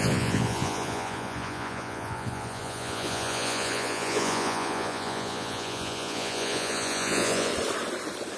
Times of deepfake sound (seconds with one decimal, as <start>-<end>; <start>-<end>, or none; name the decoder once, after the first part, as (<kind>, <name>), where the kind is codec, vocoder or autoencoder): 0.0-7.5 (vocoder, Vocos)